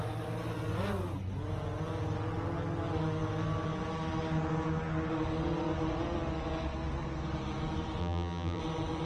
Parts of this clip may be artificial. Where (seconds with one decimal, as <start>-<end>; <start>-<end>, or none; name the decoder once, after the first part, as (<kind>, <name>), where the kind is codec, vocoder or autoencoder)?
8.0-8.6 (vocoder, BigVGAN v2)